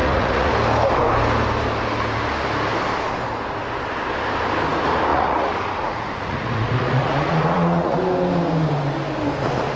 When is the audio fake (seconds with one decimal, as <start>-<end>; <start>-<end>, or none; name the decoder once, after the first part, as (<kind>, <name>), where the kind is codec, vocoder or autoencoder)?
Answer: 0.0-0.5 (vocoder, Vocos); 5.1-8.0

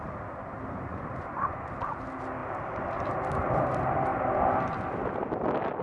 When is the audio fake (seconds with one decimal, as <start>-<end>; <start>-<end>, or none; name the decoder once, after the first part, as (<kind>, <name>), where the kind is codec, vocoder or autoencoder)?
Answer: 0.9-1.7 (vocoder, Vocos)

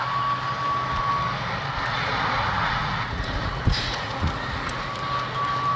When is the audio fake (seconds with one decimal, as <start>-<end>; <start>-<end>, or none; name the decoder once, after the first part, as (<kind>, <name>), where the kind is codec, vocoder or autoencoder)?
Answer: 1.8-4.9 (vocoder, Vocos)

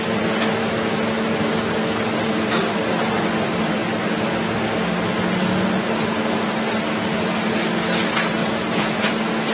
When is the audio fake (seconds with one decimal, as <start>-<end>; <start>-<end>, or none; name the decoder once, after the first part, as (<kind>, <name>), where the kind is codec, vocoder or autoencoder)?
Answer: 8.4-9.1 (vocoder, Vocos)

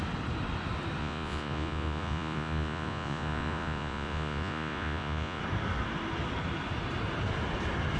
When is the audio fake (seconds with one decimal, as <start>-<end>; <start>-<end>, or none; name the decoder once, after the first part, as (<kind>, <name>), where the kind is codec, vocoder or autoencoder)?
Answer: 1.0-5.4 (vocoder, Vocos)

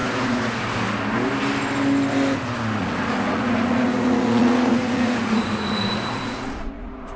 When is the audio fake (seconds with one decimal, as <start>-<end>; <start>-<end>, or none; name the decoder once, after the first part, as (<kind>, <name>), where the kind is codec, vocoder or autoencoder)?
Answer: 0.0-0.6 (vocoder, Vocos); 2.8-7.2

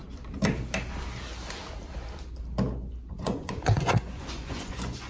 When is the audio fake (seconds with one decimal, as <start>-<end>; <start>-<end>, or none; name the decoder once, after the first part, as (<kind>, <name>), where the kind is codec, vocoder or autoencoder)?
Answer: 3.1-5.1 (vocoder, Vocos)